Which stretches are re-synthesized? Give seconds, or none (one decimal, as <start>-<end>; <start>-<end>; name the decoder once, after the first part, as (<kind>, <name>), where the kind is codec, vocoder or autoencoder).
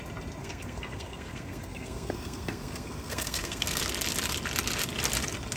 0.4-3.8 (codec, SNAC)